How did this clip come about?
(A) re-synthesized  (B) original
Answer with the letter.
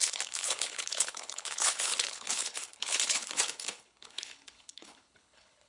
A